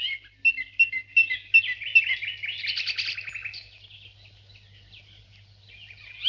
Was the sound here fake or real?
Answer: real